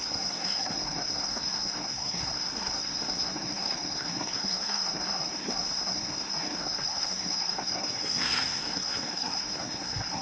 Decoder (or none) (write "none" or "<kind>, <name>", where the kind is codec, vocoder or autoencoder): codec, SNAC